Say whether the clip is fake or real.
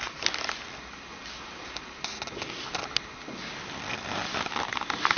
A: real